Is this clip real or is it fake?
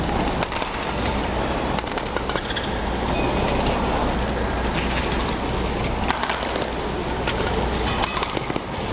real